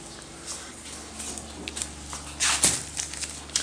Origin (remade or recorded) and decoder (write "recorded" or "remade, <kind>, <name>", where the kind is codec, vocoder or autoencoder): recorded